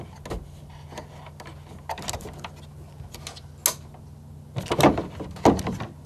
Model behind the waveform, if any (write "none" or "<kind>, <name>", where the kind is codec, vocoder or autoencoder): none